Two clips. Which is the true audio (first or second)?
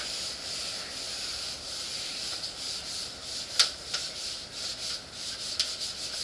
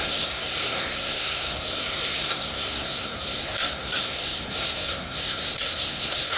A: first